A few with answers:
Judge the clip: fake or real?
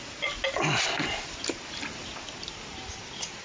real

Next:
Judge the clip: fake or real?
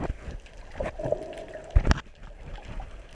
real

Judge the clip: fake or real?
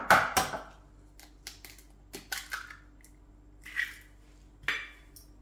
real